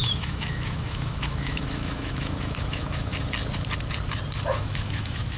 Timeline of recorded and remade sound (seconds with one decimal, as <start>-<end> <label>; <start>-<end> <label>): 0.0-3.1 remade; 3.1-4.5 recorded; 4.5-5.4 remade